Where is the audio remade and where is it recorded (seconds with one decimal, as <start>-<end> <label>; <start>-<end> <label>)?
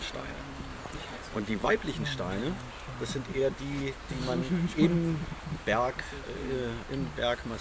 0.0-0.7 recorded; 0.7-1.7 remade; 1.7-7.6 recorded